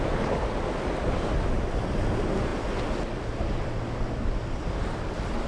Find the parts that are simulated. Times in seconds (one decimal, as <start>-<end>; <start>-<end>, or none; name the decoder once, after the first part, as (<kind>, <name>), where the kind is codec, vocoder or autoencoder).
none